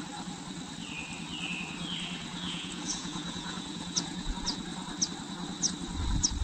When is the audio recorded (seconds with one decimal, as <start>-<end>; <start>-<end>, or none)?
0.0-2.3; 4.3-6.4